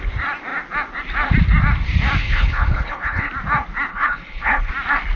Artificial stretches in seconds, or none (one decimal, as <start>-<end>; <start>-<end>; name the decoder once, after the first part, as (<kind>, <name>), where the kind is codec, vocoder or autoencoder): 2.2-3.3 (codec, HILCodec); 3.9-4.7